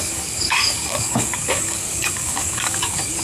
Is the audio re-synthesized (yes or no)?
yes